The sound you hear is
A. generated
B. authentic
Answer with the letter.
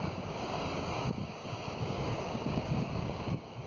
A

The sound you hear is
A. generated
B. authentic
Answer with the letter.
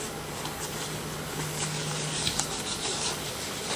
A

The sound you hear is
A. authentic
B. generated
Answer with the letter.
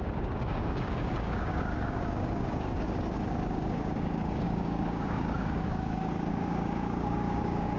B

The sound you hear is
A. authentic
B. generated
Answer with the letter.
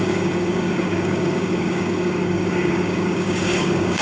B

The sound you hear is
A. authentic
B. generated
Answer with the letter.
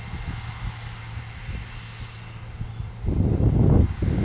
A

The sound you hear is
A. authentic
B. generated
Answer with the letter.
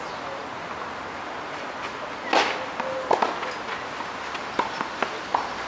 A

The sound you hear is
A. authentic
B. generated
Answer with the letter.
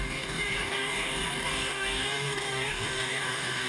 B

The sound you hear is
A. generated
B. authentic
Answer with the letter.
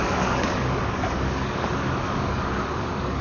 A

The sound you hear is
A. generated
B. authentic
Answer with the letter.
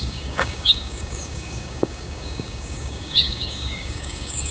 A